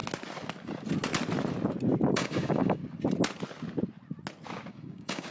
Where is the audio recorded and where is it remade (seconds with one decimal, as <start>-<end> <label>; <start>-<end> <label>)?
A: 0.0-2.1 recorded; 2.1-2.8 remade; 2.8-4.7 recorded; 4.7-5.3 remade